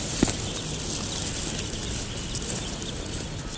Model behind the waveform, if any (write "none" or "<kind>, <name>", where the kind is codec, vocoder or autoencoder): none